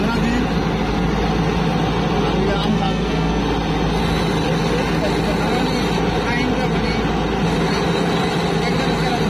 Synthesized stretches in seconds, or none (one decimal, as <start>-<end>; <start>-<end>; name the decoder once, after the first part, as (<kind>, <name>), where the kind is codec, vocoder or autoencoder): 2.7-3.4 (codec, SNAC)